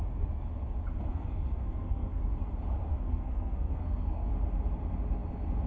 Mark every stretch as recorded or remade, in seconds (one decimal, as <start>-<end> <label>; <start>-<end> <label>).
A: 0.0-1.1 recorded; 1.1-2.2 remade; 2.2-2.9 recorded; 2.9-4.3 remade; 4.3-5.7 recorded

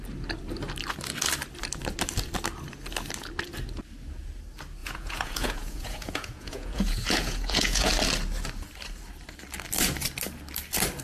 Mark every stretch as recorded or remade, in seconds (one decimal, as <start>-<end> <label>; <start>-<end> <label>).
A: 0.0-4.8 recorded; 4.8-7.9 remade; 7.9-11.0 recorded

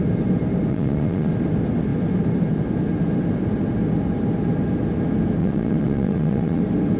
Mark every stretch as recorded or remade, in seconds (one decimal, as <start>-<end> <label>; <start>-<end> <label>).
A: 0.0-0.7 recorded; 0.7-1.3 remade; 1.3-5.4 recorded; 5.4-6.6 remade; 6.6-7.0 recorded

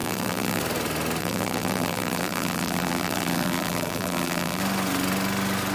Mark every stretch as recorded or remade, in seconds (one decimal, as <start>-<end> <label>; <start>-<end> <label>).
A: 0.0-0.6 remade; 0.6-1.2 recorded; 1.2-4.6 remade; 4.6-5.7 recorded

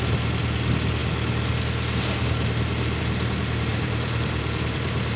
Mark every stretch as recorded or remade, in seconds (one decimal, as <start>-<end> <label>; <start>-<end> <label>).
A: 0.0-3.7 recorded; 3.7-5.2 remade

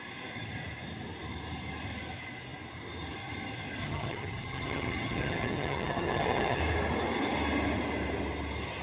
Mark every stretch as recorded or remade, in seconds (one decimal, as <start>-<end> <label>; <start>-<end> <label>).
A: 0.0-3.8 recorded; 3.8-6.6 remade; 6.6-8.8 recorded

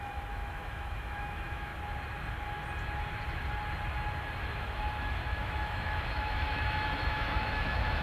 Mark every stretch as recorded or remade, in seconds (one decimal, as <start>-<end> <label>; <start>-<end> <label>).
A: 0.0-1.7 remade; 1.7-4.4 recorded; 4.4-8.0 remade

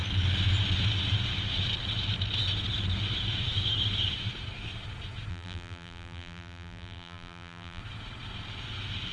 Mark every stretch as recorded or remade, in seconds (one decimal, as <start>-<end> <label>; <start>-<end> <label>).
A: 0.0-5.3 recorded; 5.3-7.8 remade; 7.8-9.1 recorded